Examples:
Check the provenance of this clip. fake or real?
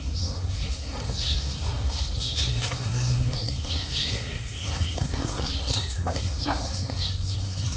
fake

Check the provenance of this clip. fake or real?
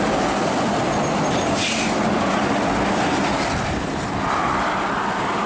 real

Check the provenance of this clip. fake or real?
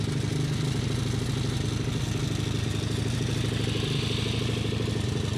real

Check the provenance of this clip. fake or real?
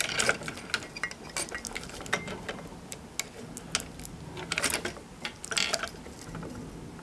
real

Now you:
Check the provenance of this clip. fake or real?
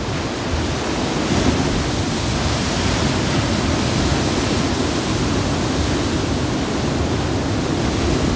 real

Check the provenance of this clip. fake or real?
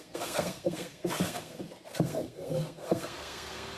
fake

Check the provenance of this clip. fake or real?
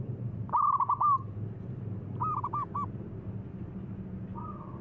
real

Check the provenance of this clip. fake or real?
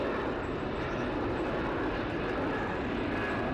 real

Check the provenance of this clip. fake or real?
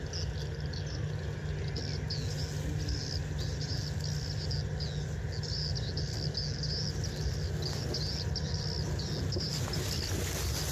real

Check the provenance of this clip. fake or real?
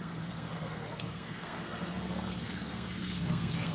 fake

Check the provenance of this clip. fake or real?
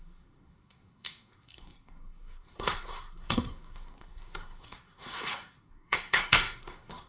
fake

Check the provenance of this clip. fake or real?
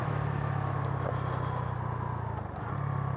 real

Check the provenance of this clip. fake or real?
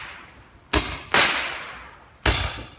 real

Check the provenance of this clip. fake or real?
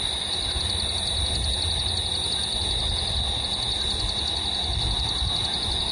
real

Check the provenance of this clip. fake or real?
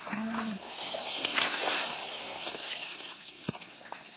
fake